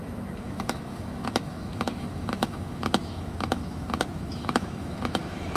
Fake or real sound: fake